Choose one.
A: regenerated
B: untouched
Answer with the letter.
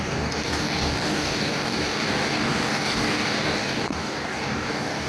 A